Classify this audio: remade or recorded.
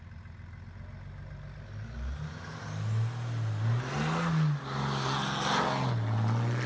recorded